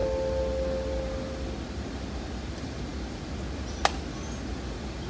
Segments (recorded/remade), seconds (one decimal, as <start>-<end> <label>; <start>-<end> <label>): 0.0-5.1 recorded

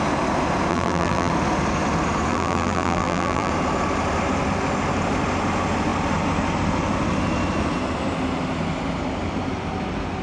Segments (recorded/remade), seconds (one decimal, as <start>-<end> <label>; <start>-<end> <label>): 0.0-0.7 recorded; 0.7-1.3 remade; 1.3-2.3 recorded; 2.3-3.5 remade; 3.5-10.2 recorded

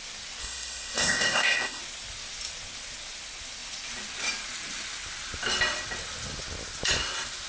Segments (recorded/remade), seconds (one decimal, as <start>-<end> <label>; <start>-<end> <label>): 0.0-0.4 recorded; 0.4-1.8 remade; 1.8-7.5 recorded

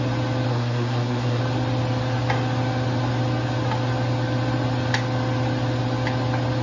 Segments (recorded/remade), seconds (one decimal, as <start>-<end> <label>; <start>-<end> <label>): 0.0-0.5 recorded; 0.5-1.4 remade; 1.4-6.6 recorded